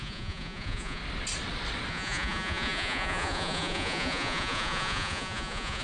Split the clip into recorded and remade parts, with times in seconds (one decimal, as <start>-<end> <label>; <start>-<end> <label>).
0.0-1.0 remade; 1.0-1.9 recorded; 1.9-5.8 remade